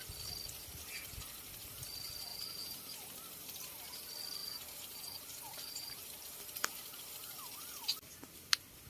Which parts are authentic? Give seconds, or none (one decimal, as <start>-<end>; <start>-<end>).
0.0-2.3; 2.8-4.4; 6.2-8.9